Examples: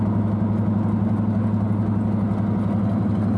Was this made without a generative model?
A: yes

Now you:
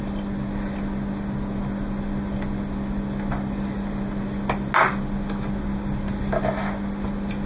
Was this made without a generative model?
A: yes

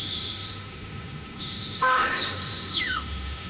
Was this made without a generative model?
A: no